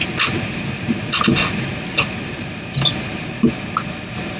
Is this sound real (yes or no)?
yes